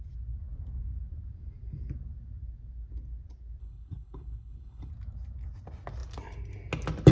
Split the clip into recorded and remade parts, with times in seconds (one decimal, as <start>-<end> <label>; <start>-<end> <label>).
0.0-3.6 recorded; 3.6-4.9 remade; 4.9-7.1 recorded

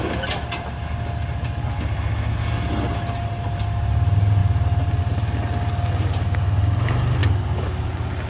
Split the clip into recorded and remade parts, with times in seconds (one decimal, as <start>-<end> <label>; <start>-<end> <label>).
0.0-7.2 recorded; 7.2-7.9 remade; 7.9-8.3 recorded